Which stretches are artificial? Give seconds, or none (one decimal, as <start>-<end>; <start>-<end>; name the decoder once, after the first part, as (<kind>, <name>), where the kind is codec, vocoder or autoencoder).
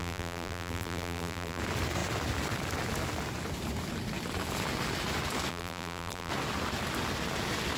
0.0-1.6 (vocoder, BigVGAN v2); 5.5-6.3